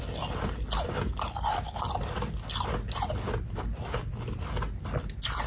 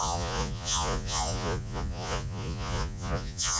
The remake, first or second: second